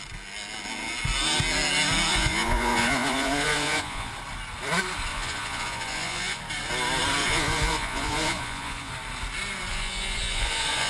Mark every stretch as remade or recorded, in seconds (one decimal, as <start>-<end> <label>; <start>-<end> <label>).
0.0-2.1 recorded; 2.1-4.1 remade; 4.1-5.1 recorded; 5.1-6.4 remade; 6.4-7.2 recorded; 7.2-8.9 remade; 8.9-9.7 recorded; 9.7-10.9 remade